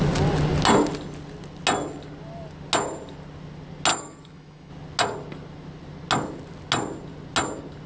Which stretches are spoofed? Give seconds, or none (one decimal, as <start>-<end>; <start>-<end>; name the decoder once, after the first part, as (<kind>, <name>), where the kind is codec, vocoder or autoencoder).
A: 3.9-4.7 (autoencoder, DAC-VAE)